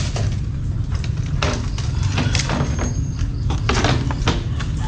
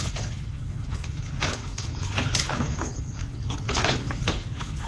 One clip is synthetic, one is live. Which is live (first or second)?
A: first